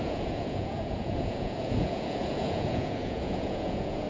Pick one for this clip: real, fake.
fake